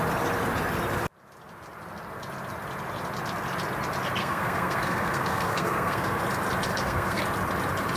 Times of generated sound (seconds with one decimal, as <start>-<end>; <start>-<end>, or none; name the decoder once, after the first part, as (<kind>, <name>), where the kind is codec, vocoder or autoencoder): 4.2-6.2 (codec, SNAC); 6.7-7.2